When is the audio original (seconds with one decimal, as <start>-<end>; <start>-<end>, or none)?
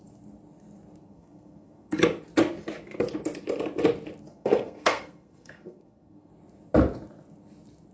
0.0-1.0; 2.0-4.3; 6.3-7.9